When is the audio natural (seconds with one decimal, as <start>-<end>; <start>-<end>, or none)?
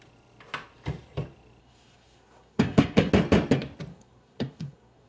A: 0.0-1.6; 3.1-3.9